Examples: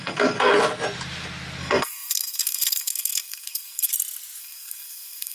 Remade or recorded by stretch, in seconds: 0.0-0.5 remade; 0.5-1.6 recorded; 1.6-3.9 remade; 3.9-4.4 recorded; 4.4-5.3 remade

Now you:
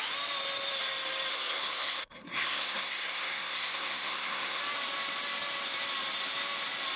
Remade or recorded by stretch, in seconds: 0.0-1.3 recorded; 1.3-4.6 remade; 4.6-7.0 recorded

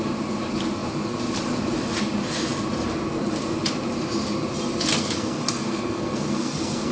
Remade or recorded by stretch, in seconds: 0.0-4.9 recorded; 4.9-6.9 remade

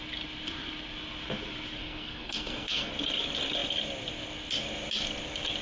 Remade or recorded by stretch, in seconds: 0.0-1.8 recorded; 1.8-2.9 remade; 2.9-5.6 recorded

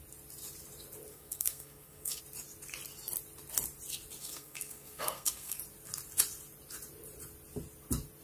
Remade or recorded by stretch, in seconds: 0.0-1.1 recorded; 1.1-2.2 remade; 2.2-4.2 recorded; 4.2-5.6 remade; 5.6-8.2 recorded

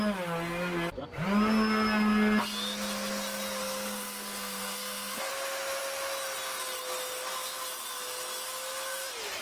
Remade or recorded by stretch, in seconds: 0.0-3.6 recorded; 3.6-5.3 remade; 5.3-9.4 recorded

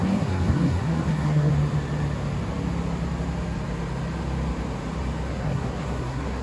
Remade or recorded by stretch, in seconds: 0.0-1.5 remade; 1.5-5.3 recorded; 5.3-6.4 remade

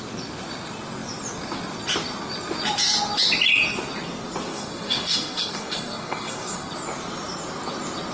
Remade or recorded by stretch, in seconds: 0.0-4.5 recorded; 4.5-6.7 remade; 6.7-8.1 recorded